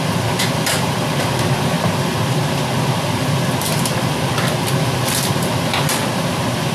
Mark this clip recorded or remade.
remade